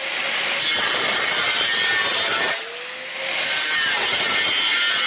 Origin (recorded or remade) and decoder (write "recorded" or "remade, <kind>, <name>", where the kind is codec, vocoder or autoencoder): recorded